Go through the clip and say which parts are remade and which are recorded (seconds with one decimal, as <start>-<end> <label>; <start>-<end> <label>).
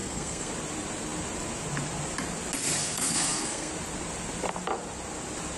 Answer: 0.0-0.5 remade; 0.5-2.8 recorded; 2.8-3.7 remade; 3.7-5.6 recorded